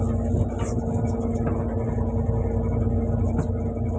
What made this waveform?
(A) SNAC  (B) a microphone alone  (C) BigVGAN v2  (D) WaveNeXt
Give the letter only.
B